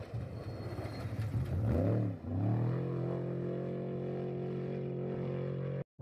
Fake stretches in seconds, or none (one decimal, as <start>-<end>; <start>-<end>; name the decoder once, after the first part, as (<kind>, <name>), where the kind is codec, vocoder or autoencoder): 0.4-1.9 (vocoder, BigVGAN v2)